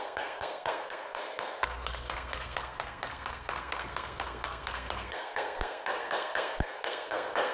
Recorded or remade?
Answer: remade